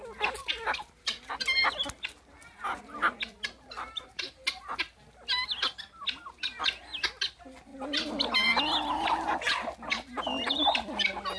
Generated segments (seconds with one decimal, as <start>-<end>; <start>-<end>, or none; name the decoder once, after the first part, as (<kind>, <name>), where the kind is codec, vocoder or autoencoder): none